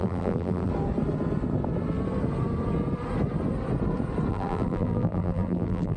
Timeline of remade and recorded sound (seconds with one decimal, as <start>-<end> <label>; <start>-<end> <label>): 0.0-0.7 remade; 0.7-4.3 recorded; 4.3-6.0 remade